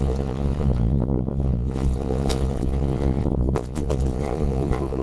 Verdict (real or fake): fake